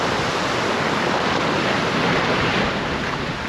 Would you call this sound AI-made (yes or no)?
yes